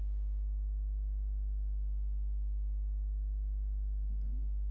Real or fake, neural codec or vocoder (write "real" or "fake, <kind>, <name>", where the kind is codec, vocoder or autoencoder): real